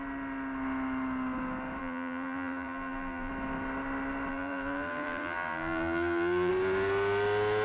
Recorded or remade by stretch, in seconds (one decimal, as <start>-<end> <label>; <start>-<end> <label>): 0.0-1.8 recorded; 1.8-3.3 remade; 3.3-4.3 recorded; 4.3-6.5 remade; 6.5-7.6 recorded